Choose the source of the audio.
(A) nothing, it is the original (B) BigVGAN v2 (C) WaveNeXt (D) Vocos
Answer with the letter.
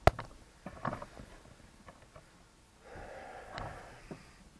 A